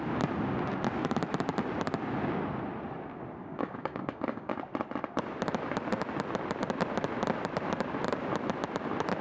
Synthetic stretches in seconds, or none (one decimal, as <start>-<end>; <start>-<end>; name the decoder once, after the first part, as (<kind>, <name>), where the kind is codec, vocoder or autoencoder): 3.4-4.5 (codec, DAC)